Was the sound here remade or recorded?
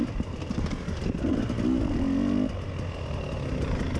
recorded